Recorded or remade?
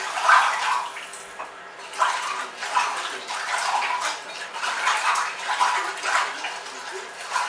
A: recorded